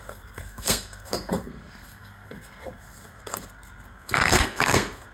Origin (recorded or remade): remade